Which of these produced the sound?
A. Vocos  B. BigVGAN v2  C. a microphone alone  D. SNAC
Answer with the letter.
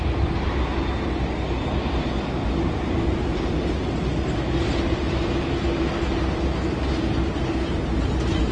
C